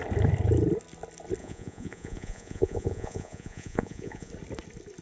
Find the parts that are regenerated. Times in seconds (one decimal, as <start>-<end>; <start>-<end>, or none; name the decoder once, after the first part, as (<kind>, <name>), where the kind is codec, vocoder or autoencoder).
1.4-4.3 (vocoder, Vocos)